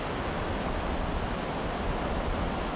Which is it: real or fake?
real